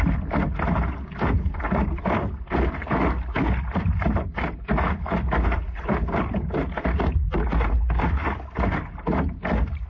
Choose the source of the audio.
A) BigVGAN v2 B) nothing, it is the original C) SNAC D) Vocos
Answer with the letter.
B